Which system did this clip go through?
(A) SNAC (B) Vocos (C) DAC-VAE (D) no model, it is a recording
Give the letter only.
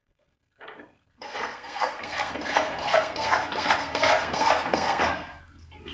A